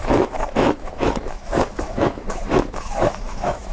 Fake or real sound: fake